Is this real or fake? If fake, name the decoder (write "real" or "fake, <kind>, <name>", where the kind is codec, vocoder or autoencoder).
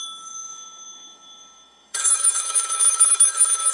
fake, autoencoder, DAC-VAE